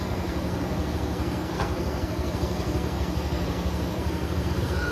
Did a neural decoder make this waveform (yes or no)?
yes